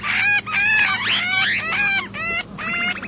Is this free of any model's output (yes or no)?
yes